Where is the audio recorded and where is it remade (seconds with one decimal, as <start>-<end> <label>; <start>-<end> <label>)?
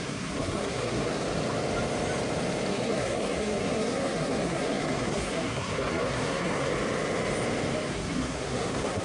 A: 0.0-1.2 remade; 1.2-2.7 recorded; 2.7-6.7 remade; 6.7-7.9 recorded; 7.9-9.0 remade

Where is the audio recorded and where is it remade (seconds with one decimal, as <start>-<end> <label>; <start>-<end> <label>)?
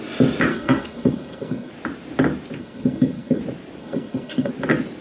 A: 0.0-0.5 recorded; 0.5-1.7 remade; 1.7-2.6 recorded; 2.6-3.4 remade; 3.4-3.8 recorded; 3.8-4.5 remade; 4.5-5.0 recorded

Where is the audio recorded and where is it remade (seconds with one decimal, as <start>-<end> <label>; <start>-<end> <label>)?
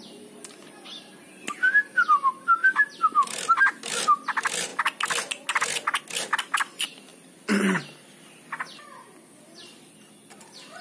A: 0.0-10.8 recorded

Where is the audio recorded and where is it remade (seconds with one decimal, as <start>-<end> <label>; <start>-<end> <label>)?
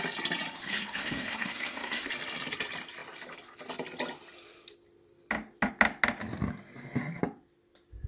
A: 0.0-0.6 recorded; 0.6-2.1 remade; 2.1-8.1 recorded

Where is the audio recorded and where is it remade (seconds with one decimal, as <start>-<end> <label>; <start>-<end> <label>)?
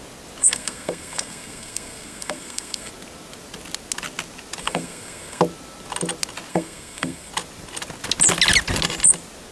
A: 0.0-0.4 recorded; 0.4-2.9 remade; 2.9-4.6 recorded; 4.6-5.4 remade; 5.4-6.5 recorded; 6.5-7.3 remade; 7.3-9.5 recorded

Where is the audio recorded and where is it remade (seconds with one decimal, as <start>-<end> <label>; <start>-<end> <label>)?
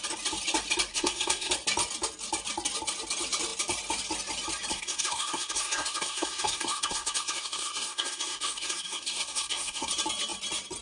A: 0.0-0.9 recorded; 0.9-1.5 remade; 1.5-4.7 recorded; 4.7-9.9 remade; 9.9-10.8 recorded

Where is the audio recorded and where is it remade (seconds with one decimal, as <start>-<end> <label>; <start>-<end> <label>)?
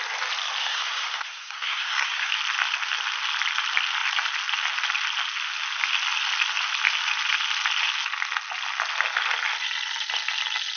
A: 0.0-0.6 recorded; 0.6-2.3 remade; 2.3-10.8 recorded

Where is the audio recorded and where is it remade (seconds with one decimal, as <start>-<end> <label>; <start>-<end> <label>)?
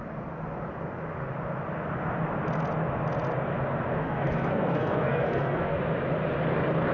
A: 0.0-4.0 recorded; 4.0-5.8 remade; 5.8-6.9 recorded